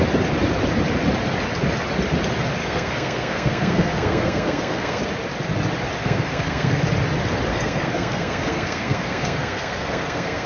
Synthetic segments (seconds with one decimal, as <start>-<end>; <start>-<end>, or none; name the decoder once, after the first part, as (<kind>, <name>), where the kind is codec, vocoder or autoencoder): 2.6-5.0 (codec, SNAC); 6.0-6.8; 7.5-10.5